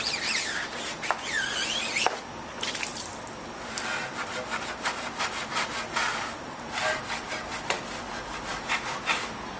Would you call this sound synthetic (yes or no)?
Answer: no